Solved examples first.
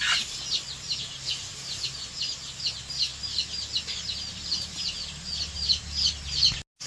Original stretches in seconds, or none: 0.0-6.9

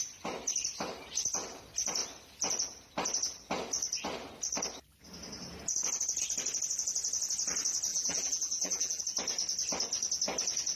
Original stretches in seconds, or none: 0.0-7.9; 9.0-10.7

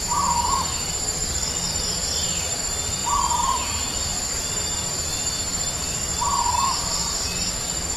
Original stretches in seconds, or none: 0.7-1.7; 3.0-3.6; 6.1-8.0